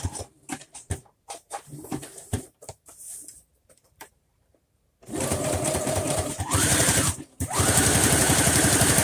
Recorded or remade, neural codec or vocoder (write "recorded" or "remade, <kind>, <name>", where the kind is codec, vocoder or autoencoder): remade, vocoder, BigVGAN v2